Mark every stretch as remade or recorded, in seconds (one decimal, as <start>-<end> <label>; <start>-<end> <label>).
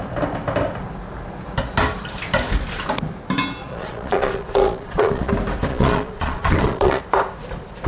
0.0-3.6 recorded; 3.6-5.3 remade; 5.3-5.7 recorded; 5.7-7.0 remade; 7.0-7.9 recorded